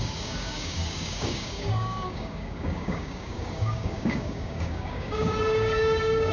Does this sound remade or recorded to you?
remade